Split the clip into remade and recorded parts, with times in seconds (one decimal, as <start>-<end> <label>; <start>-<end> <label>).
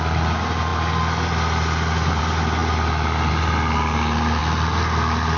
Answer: 0.0-5.4 recorded